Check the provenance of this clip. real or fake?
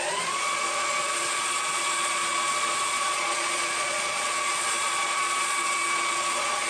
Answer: fake